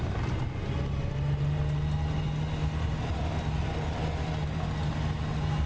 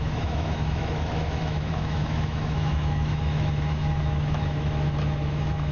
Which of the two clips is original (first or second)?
first